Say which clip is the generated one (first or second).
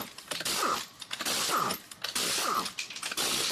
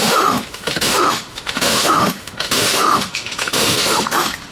second